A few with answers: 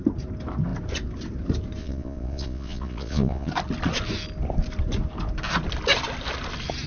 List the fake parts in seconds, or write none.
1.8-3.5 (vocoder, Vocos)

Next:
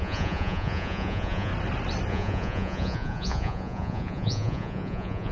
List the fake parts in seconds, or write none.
0.0-1.5 (vocoder, Vocos); 2.1-5.3

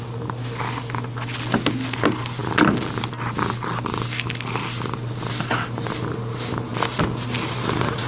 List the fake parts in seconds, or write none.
none